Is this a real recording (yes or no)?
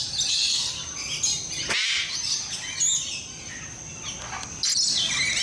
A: yes